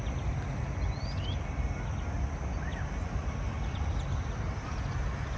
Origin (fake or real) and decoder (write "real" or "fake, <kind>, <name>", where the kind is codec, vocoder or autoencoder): real